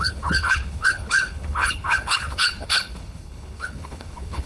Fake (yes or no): yes